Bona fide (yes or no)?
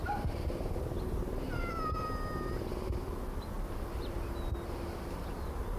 yes